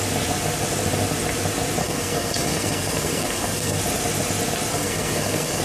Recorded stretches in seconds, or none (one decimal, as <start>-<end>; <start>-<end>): 0.0-1.8; 3.8-4.7